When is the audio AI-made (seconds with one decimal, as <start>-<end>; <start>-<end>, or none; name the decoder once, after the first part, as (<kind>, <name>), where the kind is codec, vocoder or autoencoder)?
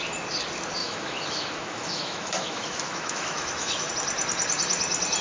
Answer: 0.8-3.9 (autoencoder, DAC-VAE)